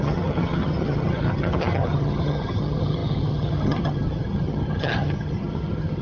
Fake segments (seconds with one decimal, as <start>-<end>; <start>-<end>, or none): 0.0-6.0